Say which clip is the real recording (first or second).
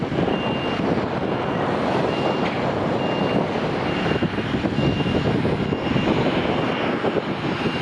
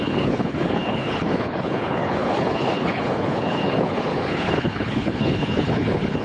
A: first